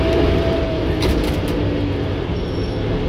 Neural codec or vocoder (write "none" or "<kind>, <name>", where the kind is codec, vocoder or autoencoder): none